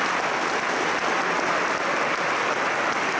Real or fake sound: real